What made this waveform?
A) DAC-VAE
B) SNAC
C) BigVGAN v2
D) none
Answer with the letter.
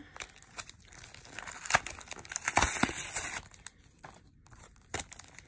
D